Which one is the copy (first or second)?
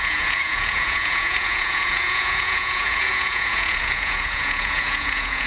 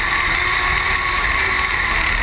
first